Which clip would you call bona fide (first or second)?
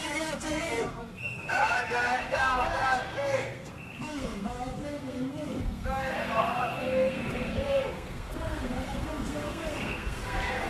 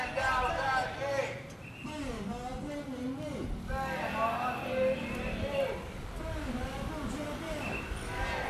second